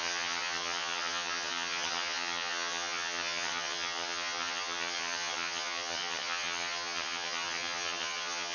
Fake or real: fake